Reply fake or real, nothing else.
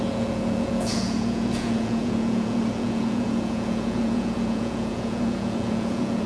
fake